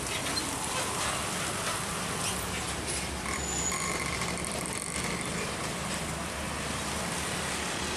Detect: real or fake real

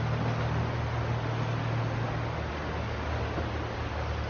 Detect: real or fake real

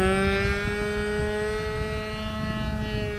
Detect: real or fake real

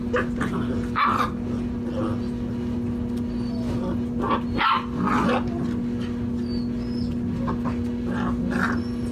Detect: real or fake real